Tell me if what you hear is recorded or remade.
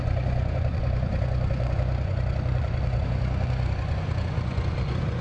remade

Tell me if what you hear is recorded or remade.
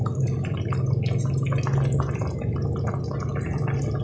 recorded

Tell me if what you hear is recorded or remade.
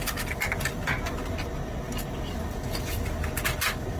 recorded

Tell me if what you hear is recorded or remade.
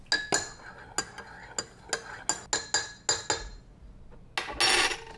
recorded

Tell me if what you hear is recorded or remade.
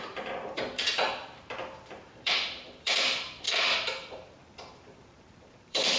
remade